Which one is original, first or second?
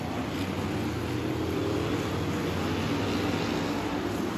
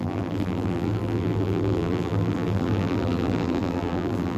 first